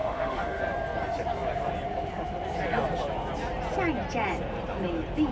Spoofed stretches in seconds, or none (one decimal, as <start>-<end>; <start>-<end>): 0.0-0.6